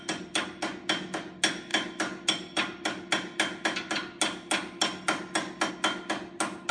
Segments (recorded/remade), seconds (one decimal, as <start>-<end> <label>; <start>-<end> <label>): 0.0-6.7 recorded